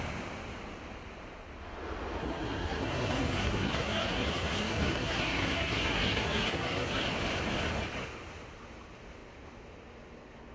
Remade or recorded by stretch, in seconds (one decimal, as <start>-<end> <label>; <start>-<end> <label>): 0.0-2.2 recorded; 2.2-7.0 remade; 7.0-10.5 recorded